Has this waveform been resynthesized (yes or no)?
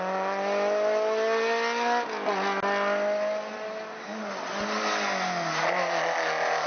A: no